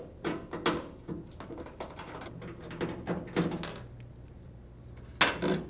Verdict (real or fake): real